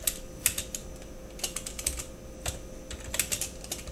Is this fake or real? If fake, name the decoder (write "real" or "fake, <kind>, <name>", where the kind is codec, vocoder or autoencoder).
real